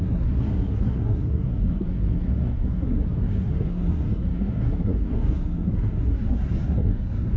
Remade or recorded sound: remade